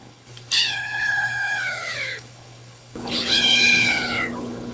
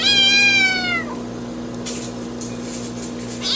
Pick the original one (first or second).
second